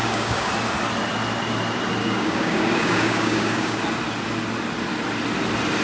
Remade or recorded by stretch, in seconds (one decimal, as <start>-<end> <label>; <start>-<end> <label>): 0.0-0.5 remade; 0.5-2.0 recorded; 2.0-3.8 remade; 3.8-5.8 recorded